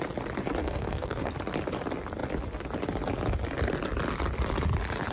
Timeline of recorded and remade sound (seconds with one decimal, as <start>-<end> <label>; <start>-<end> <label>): 0.0-0.6 recorded; 0.6-1.3 remade; 1.3-5.1 recorded